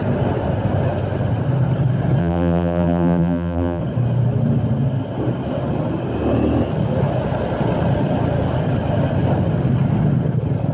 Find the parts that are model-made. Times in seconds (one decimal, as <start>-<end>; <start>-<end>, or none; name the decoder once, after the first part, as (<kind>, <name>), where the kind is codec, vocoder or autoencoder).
2.2-3.8 (vocoder, BigVGAN v2)

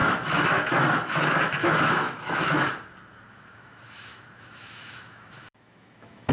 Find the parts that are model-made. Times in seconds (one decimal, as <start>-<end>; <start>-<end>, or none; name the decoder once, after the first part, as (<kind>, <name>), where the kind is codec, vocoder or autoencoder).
0.0-0.7 (autoencoder, DAC-VAE); 1.6-2.7; 3.3-6.3

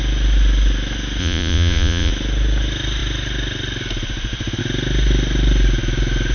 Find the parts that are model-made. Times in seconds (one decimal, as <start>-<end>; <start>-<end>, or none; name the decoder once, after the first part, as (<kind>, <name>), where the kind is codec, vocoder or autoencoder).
1.2-2.1 (vocoder, Vocos)

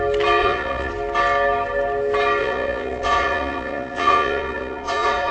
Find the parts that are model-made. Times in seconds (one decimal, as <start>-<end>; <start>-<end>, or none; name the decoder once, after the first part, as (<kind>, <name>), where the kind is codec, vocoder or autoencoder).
0.4-0.9 (vocoder, Vocos); 2.4-5.3

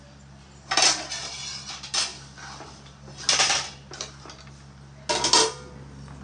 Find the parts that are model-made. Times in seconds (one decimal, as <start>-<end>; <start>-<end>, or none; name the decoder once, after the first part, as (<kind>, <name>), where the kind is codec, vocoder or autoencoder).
none

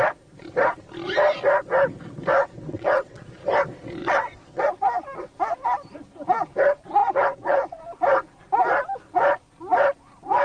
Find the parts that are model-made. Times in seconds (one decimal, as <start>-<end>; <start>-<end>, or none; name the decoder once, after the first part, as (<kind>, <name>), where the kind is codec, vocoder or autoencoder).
2.4-3.2 (vocoder, WaveNeXt); 4.0-4.6; 7.0-7.8

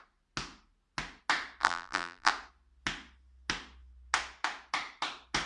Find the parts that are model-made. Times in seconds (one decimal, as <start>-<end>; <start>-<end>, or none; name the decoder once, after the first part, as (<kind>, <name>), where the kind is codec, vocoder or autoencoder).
1.6-2.3 (vocoder, BigVGAN v2)